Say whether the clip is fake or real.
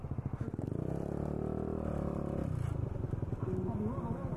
real